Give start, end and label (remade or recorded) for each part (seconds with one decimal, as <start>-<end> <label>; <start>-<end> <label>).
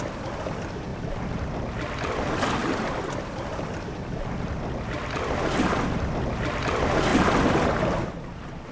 0.0-0.9 recorded; 0.9-1.6 remade; 1.6-2.6 recorded; 2.6-3.6 remade; 3.6-7.1 recorded; 7.1-8.0 remade; 8.0-8.7 recorded